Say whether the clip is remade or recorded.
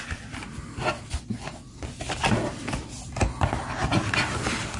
recorded